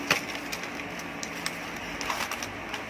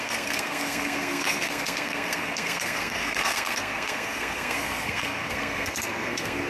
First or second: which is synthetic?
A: second